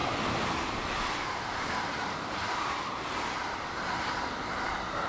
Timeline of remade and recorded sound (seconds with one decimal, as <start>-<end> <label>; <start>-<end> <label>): 0.0-3.1 remade; 3.1-5.1 recorded